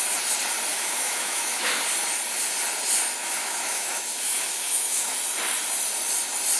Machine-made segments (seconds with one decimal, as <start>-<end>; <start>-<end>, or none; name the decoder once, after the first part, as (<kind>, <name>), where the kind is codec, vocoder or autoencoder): 0.7-1.8 (autoencoder, DAC-VAE); 3.2-5.1

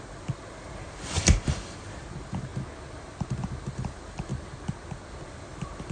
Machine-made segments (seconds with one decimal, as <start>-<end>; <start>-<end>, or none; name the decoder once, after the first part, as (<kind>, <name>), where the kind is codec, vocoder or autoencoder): 0.0-2.5 (vocoder, BigVGAN v2); 3.7-4.3; 5.1-5.9

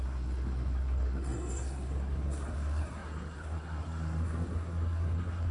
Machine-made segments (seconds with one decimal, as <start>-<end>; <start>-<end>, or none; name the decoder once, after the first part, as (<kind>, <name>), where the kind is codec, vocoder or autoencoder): 0.0-5.5 (codec, SNAC)

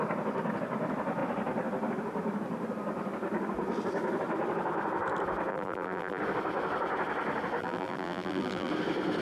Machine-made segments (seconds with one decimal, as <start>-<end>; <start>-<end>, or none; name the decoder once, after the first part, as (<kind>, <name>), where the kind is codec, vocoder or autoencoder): 5.5-6.2 (vocoder, BigVGAN v2); 7.6-8.7

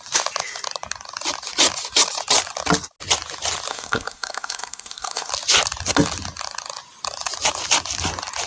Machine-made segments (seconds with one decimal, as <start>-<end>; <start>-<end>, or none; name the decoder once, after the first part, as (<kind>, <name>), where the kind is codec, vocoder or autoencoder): 3.7-5.3 (codec, SNAC)

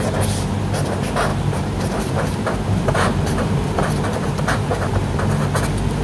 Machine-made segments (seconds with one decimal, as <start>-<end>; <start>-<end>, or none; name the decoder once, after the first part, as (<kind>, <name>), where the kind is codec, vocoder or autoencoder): 1.3-4.9 (vocoder, BigVGAN v2)

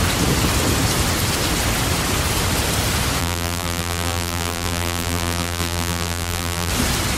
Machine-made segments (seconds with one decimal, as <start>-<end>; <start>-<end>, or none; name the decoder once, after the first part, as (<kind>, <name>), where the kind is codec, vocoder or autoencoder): 3.2-6.7 (vocoder, BigVGAN v2)

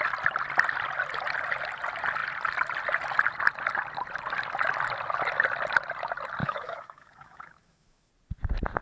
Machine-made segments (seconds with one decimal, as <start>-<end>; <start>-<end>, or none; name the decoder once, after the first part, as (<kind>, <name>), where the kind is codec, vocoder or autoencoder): 6.4-8.1 (autoencoder, DAC-VAE)